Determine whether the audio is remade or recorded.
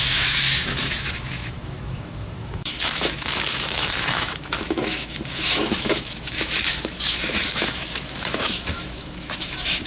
remade